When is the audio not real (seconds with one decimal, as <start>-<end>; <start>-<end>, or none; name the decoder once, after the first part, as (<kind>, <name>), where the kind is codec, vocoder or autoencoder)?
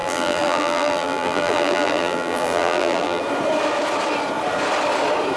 0.0-3.2 (vocoder, BigVGAN v2)